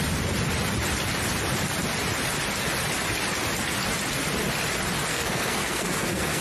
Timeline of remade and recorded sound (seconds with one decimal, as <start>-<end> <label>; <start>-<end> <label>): 0.0-5.1 recorded; 5.1-6.4 remade